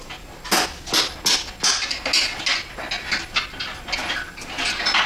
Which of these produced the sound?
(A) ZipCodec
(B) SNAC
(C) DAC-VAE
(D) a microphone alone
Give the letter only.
D